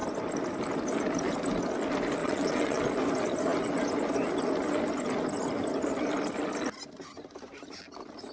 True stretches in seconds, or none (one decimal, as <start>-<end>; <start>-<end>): 0.0-2.2; 2.8-8.3